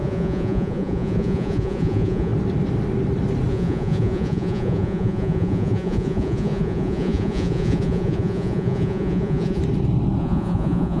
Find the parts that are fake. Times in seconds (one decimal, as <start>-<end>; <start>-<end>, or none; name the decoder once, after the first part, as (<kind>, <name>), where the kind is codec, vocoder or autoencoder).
0.0-2.3 (vocoder, Vocos); 3.5-9.6; 10.2-11.0